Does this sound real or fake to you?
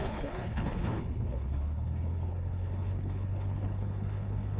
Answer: fake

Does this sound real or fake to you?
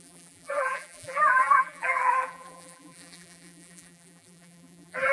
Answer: fake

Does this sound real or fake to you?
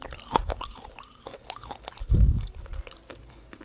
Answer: real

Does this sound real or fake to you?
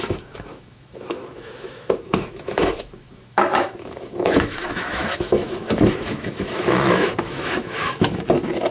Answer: fake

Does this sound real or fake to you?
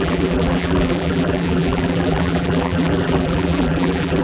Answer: fake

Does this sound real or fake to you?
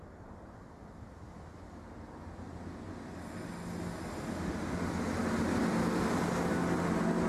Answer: real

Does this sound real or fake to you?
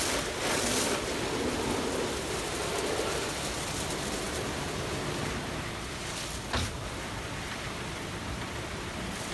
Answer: real